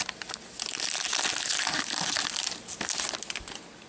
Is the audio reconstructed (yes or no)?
no